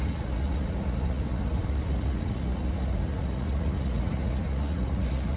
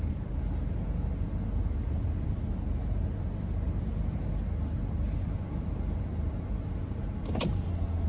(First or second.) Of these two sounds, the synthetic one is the first